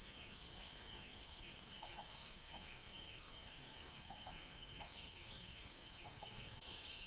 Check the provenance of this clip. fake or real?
fake